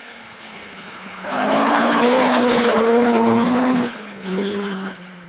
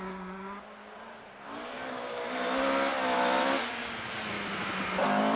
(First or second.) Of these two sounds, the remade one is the first